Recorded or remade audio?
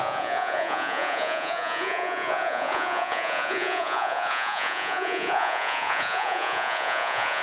remade